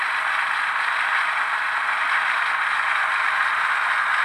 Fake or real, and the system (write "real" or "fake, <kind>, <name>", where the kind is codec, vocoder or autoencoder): real